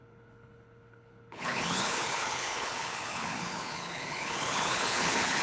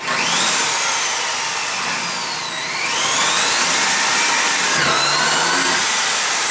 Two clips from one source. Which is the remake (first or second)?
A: first